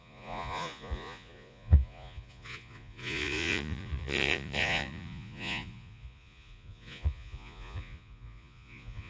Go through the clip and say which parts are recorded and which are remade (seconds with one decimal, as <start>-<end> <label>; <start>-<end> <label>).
0.0-9.1 remade